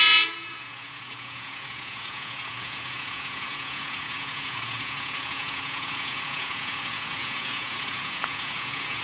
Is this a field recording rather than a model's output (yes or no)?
no